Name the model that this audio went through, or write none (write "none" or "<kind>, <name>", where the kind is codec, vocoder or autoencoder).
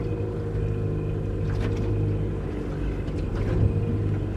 none